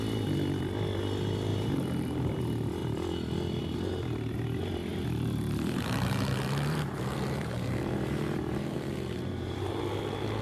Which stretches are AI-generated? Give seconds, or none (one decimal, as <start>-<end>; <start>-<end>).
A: 1.5-2.4; 4.9-9.8